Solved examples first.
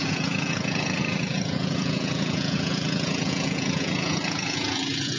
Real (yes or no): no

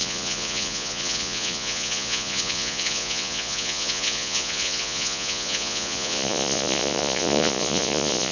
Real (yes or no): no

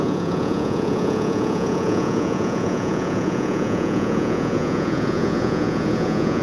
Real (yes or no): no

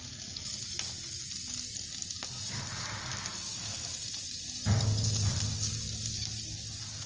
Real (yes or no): yes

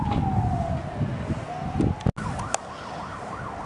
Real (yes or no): yes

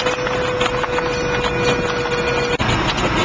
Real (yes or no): yes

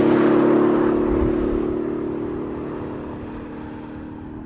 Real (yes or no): yes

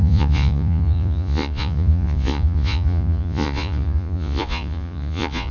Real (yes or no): no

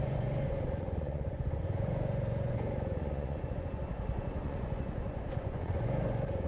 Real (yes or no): no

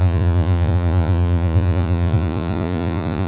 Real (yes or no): no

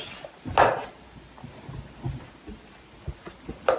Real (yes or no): yes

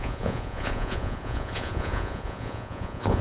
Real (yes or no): no